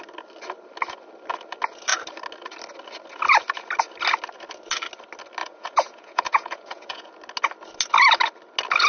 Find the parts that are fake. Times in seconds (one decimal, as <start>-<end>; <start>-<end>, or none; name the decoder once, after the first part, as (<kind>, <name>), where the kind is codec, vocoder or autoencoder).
5.4-7.1 (vocoder, Vocos)